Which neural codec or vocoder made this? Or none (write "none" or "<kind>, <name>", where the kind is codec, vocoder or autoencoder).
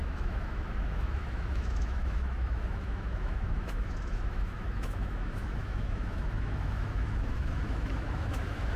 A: autoencoder, DAC-VAE